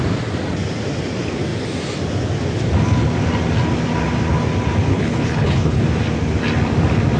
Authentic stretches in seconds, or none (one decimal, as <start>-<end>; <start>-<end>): 0.0-4.9; 5.8-7.2